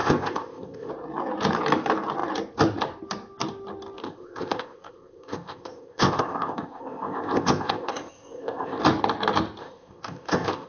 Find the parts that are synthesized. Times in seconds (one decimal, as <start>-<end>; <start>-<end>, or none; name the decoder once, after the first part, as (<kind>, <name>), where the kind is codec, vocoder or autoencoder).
0.0-0.9 (codec, ZipCodec); 4.0-8.8; 9.6-10.7